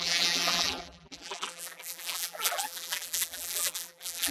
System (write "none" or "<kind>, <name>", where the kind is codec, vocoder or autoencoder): vocoder, BigVGAN v2